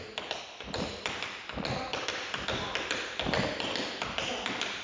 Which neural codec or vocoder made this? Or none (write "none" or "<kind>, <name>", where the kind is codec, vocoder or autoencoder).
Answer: none